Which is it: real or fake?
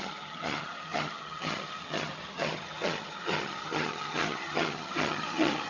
fake